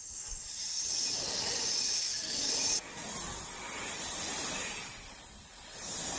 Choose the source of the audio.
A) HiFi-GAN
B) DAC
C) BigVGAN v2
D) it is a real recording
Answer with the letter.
D